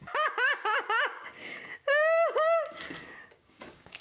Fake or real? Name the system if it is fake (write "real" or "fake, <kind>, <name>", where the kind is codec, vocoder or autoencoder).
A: fake, codec, DAC